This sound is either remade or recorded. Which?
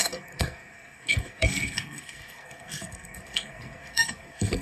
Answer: remade